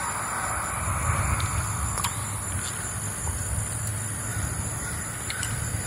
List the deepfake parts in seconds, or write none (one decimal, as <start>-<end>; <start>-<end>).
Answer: 4.3-5.9